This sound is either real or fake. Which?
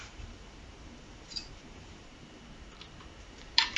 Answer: fake